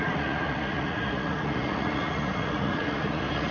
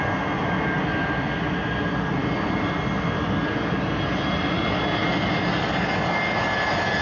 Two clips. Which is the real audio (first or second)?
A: second